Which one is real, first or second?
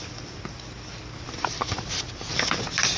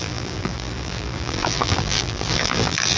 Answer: first